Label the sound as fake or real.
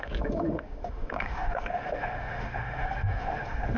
fake